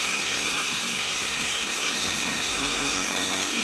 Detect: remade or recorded remade